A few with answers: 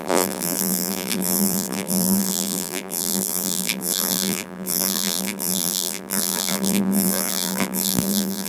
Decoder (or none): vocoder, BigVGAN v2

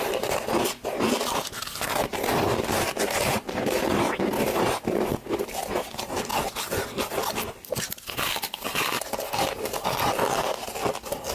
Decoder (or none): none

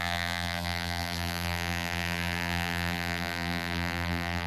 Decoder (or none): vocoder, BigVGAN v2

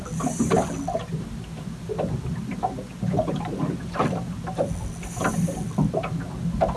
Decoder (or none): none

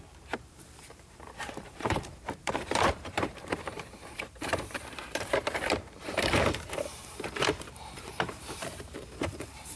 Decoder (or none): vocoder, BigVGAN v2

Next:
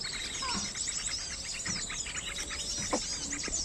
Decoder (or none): none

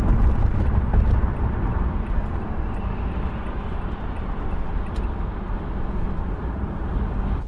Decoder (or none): none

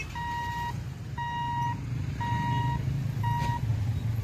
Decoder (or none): none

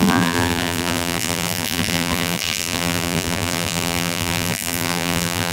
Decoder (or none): vocoder, BigVGAN v2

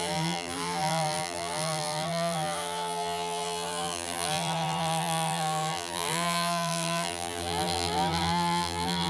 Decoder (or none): vocoder, BigVGAN v2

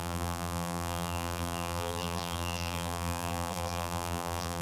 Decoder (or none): vocoder, BigVGAN v2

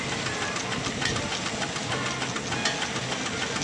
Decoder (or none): none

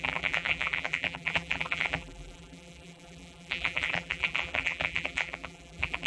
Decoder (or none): vocoder, BigVGAN v2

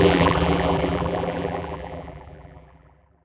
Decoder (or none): vocoder, BigVGAN v2